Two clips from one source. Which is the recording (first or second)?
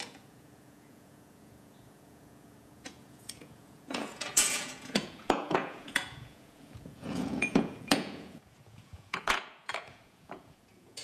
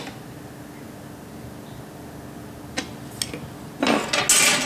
second